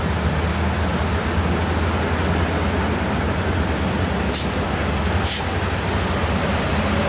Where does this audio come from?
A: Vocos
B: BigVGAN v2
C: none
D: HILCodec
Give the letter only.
C